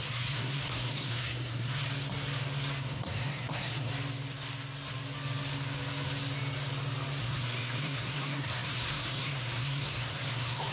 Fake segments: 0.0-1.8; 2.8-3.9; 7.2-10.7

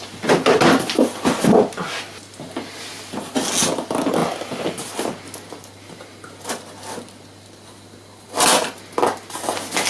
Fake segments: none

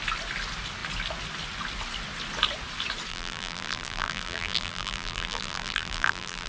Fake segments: 3.1-6.5